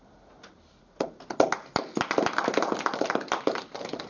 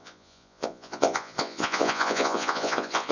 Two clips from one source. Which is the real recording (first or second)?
first